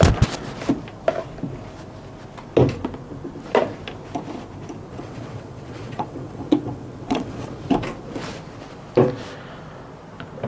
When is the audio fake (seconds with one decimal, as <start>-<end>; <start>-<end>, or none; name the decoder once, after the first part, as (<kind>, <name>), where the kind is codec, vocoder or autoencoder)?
4.9-7.7 (vocoder, WaveNeXt)